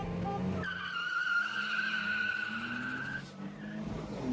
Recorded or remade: recorded